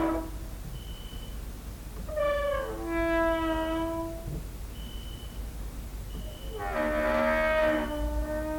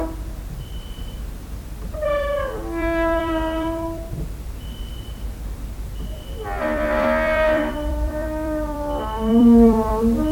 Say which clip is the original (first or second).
first